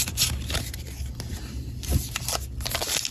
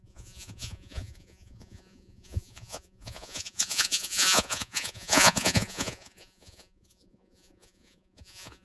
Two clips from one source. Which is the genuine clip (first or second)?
first